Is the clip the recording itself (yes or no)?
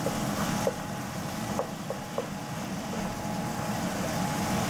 yes